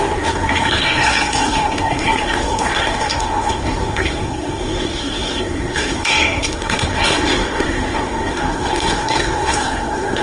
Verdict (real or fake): fake